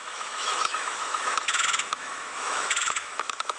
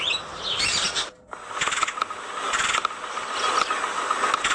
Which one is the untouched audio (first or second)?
second